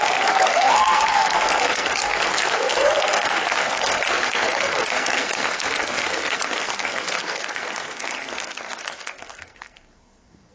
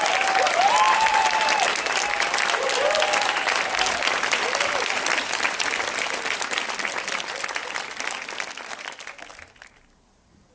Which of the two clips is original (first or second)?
second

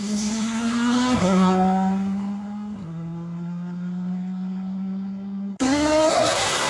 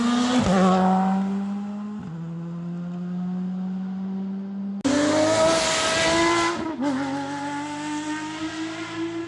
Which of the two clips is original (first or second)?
second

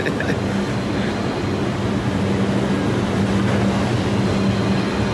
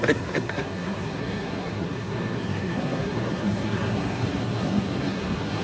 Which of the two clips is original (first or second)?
first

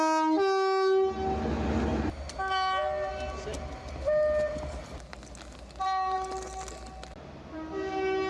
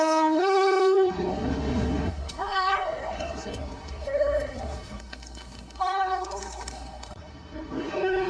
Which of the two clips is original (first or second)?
first